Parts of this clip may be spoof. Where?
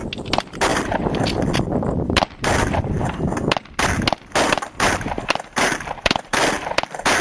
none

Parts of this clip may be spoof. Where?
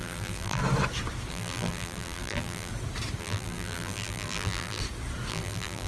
0.0-0.6 (vocoder, BigVGAN v2); 1.3-2.7; 3.2-4.8; 5.3-5.9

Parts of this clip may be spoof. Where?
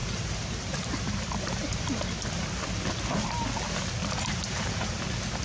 0.0-1.9 (vocoder, BigVGAN v2); 4.0-4.8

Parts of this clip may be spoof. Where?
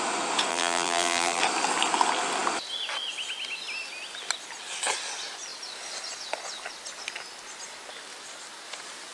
0.5-1.4 (vocoder, BigVGAN v2)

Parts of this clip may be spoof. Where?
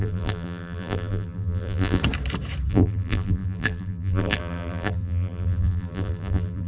0.0-2.0 (vocoder, BigVGAN v2); 2.7-6.7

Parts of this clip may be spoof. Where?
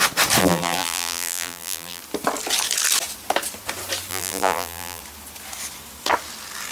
0.4-2.0 (vocoder, BigVGAN v2); 4.1-5.0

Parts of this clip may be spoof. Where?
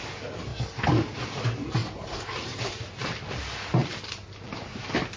1.8-3.3 (vocoder, BigVGAN v2); 3.8-4.8